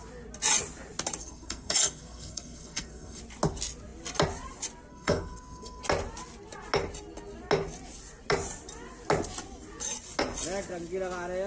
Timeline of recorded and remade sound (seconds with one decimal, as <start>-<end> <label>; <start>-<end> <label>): 0.0-1.2 recorded; 1.2-3.2 remade; 3.2-4.9 recorded; 4.9-5.8 remade; 5.8-11.5 recorded